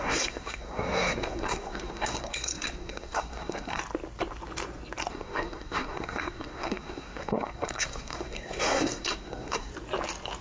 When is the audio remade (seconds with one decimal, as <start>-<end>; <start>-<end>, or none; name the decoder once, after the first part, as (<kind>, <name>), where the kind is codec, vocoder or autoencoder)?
0.0-3.8 (codec, SNAC); 5.1-9.7